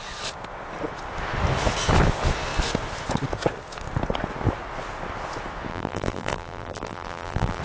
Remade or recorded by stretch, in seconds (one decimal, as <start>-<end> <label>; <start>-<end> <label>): 0.0-5.7 recorded; 5.7-7.6 remade